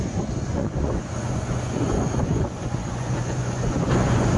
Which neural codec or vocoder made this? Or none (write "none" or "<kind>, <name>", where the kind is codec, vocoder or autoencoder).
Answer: vocoder, Vocos